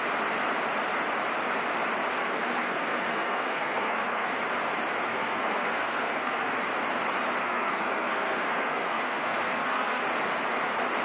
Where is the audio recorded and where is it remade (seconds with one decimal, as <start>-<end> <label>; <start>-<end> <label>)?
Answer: 0.0-2.2 recorded; 2.2-4.3 remade; 4.3-5.1 recorded; 5.1-6.6 remade; 6.6-7.4 recorded; 7.4-10.0 remade; 10.0-11.0 recorded